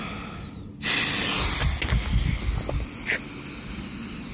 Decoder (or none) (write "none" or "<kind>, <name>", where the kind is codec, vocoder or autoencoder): none